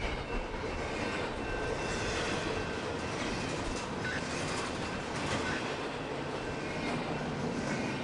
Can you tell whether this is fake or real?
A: real